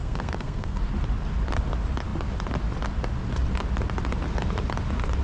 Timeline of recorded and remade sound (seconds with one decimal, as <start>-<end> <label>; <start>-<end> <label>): 0.0-0.8 remade; 0.8-5.2 recorded

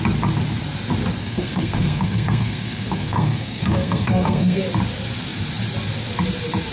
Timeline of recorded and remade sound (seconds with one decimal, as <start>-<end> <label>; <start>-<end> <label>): 0.0-1.2 recorded; 1.2-4.6 remade; 4.6-6.7 recorded

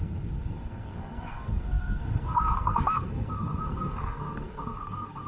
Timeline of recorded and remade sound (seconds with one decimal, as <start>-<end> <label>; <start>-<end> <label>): 0.0-5.3 remade